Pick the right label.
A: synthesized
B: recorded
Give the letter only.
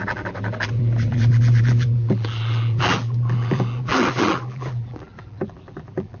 A